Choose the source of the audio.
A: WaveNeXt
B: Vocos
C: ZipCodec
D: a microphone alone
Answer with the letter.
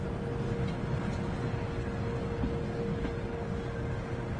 D